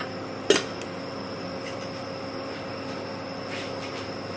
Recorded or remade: recorded